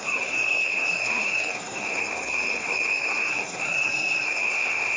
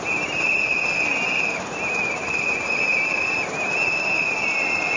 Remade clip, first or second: first